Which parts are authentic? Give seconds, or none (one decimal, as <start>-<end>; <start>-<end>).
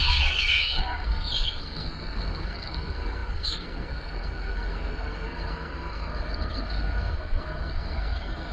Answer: none